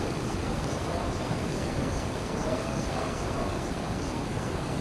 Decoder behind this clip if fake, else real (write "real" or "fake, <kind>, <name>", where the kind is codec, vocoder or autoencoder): fake, codec, SNAC